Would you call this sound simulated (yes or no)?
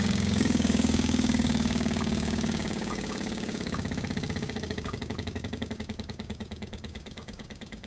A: yes